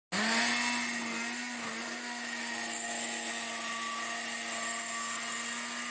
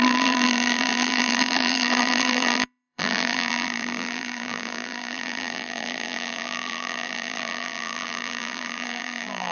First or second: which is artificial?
second